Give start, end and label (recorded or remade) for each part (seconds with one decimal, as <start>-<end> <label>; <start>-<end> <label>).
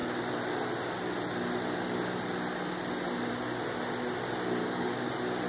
0.0-4.6 recorded; 4.6-5.1 remade; 5.1-5.5 recorded